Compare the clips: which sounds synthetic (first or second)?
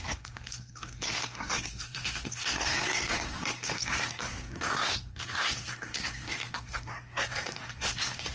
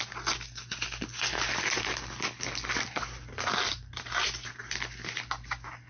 first